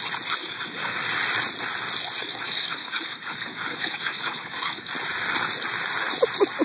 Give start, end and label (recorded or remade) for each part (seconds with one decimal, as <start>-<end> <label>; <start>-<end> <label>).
0.0-0.4 recorded; 0.4-1.0 remade; 1.0-2.2 recorded; 2.2-4.9 remade; 4.9-6.6 recorded